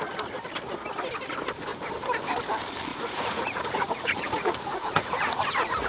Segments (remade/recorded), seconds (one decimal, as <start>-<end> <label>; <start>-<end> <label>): 0.0-2.9 recorded; 2.9-5.9 remade